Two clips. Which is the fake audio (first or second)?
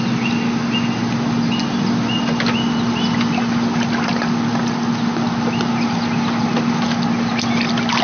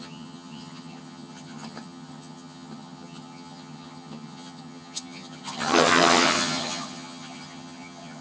second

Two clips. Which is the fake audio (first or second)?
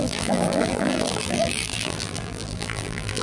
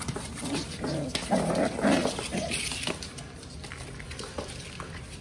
first